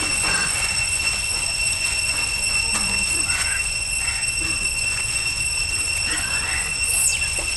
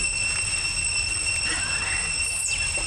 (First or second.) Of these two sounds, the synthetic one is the first